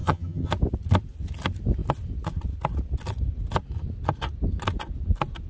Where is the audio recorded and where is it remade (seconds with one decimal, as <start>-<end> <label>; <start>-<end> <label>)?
0.0-0.5 remade; 0.5-5.5 recorded